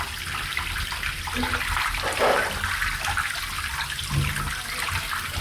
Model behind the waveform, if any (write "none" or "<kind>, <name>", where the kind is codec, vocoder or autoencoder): none